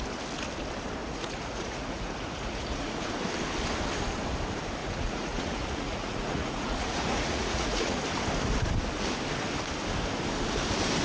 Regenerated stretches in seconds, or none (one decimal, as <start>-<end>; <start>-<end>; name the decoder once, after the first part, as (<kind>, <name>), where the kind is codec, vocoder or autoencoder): 1.0-3.1 (vocoder, Vocos); 4.8-8.0